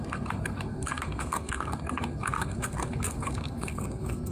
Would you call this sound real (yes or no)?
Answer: no